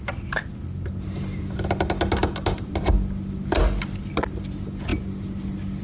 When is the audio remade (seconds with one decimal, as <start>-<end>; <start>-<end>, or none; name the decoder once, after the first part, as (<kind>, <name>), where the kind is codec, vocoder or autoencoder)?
none